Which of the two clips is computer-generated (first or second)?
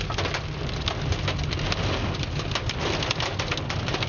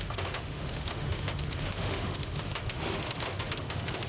second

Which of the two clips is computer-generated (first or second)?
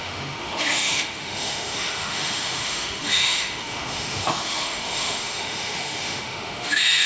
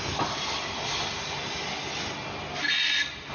first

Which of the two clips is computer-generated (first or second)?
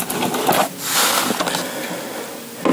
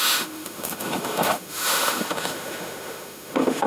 second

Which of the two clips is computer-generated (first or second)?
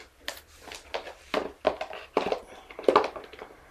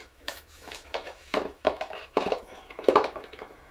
second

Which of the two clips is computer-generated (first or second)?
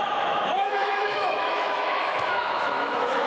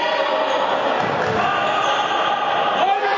first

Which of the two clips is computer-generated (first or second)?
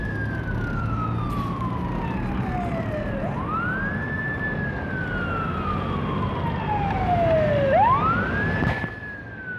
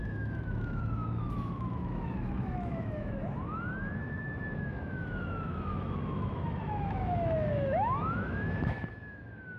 second